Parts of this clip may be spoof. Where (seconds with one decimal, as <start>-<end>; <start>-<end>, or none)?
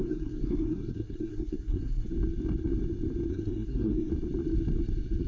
0.0-2.1; 3.3-4.1